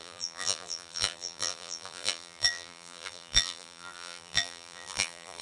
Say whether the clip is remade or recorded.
remade